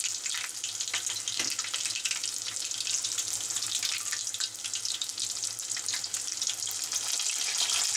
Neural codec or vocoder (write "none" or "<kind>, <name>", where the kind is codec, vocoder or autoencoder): none